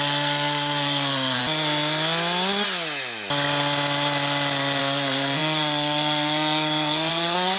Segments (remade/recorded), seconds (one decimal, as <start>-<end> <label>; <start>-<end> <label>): 0.0-1.4 remade; 1.4-4.8 recorded; 4.8-7.6 remade